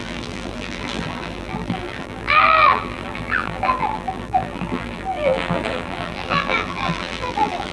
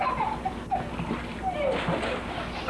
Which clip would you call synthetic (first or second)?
first